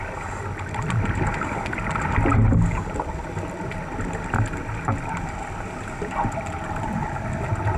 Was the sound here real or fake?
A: real